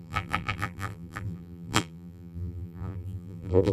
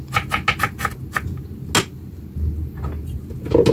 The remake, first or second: first